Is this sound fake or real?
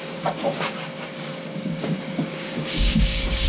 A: fake